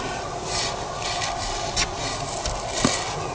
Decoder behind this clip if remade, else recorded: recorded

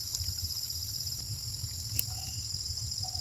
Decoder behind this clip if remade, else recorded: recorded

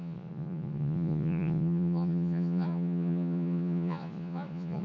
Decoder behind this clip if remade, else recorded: remade, vocoder, Vocos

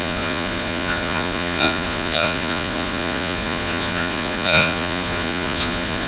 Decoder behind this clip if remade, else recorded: remade, vocoder, Vocos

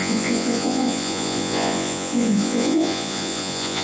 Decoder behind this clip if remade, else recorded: remade, vocoder, Vocos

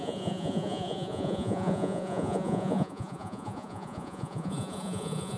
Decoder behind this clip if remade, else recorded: remade, vocoder, Vocos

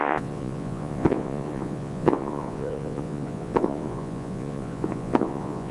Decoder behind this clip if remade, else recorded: remade, vocoder, Vocos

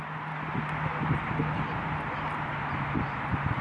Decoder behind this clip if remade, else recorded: recorded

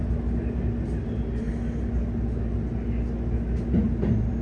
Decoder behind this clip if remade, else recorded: recorded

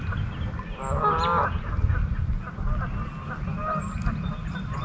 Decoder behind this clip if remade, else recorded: recorded